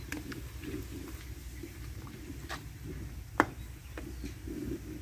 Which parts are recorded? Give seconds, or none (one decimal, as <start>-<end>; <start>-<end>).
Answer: 0.0-1.4; 3.3-5.0